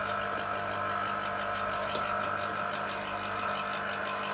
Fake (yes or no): no